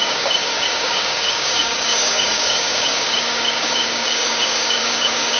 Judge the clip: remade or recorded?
remade